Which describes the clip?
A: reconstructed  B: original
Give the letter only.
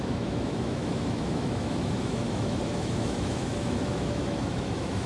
A